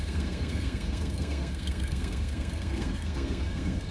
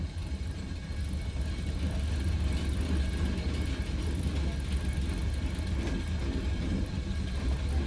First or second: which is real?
second